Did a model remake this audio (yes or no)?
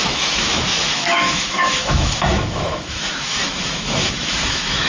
yes